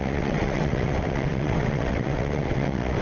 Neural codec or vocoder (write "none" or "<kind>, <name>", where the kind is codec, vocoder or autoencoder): vocoder, WaveNeXt